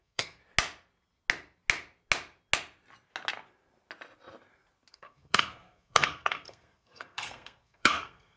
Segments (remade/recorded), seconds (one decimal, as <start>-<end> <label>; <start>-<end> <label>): 0.0-0.4 remade; 0.4-4.9 recorded; 4.9-8.4 remade